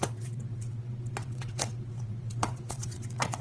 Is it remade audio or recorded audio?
remade